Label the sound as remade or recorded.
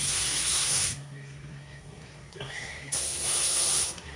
remade